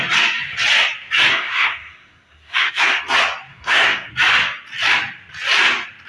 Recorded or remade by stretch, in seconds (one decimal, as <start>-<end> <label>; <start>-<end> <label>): 0.0-1.3 recorded; 1.3-3.0 remade; 3.0-3.5 recorded; 3.5-4.1 remade; 4.1-6.1 recorded